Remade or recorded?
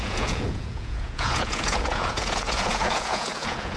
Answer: remade